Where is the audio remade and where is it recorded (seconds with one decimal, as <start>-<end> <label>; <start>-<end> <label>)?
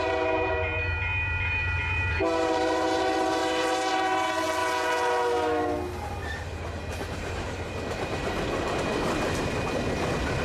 0.0-4.6 remade; 4.6-6.1 recorded; 6.1-10.4 remade